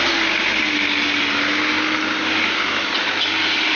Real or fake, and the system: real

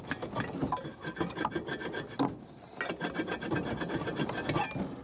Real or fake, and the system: real